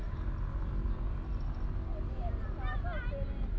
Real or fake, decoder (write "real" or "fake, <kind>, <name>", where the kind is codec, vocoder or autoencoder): real